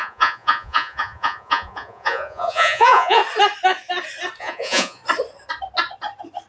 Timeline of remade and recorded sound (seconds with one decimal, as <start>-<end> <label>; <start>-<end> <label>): 0.0-3.2 remade; 3.2-4.4 recorded; 4.4-5.0 remade; 5.0-6.5 recorded